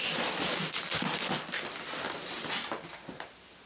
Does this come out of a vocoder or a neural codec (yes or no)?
no